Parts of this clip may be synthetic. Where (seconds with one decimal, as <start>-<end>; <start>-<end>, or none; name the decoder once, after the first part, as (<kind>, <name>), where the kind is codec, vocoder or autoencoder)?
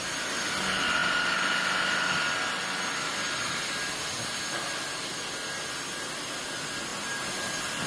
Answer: none